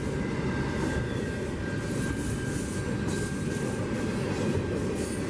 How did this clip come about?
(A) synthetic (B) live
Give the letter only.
B